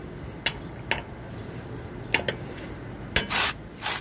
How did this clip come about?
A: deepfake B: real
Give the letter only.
B